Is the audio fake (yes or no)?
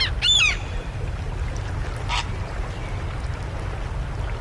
no